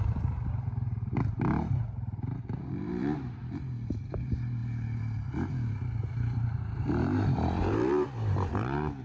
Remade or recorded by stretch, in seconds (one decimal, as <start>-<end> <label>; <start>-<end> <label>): 0.0-3.4 remade; 3.4-4.1 recorded; 4.1-4.6 remade; 4.6-6.0 recorded; 6.0-9.0 remade